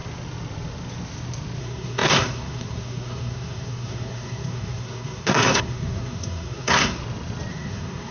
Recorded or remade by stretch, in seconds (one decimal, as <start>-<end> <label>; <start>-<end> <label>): 0.0-1.6 recorded; 1.6-7.0 remade; 7.0-7.5 recorded; 7.5-8.1 remade